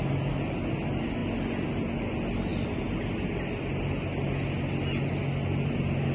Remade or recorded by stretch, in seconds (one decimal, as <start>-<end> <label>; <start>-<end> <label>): 0.0-6.1 recorded